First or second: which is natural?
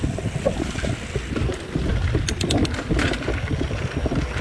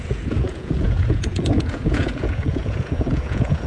first